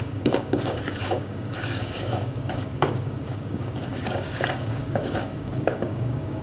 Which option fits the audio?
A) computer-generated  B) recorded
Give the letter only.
A